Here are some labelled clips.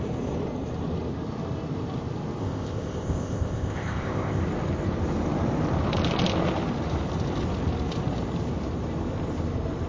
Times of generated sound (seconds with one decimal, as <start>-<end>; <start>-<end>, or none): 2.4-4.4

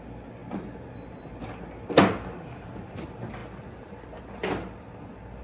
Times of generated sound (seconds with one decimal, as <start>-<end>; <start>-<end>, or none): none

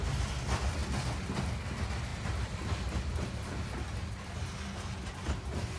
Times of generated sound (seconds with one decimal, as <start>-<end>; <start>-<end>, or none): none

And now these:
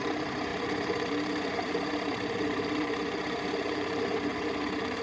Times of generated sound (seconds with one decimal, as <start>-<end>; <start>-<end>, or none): 0.0-5.0

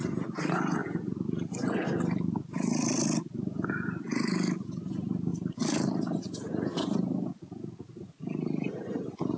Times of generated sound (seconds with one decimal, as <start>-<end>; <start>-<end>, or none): none